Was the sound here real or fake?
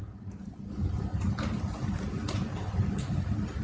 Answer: real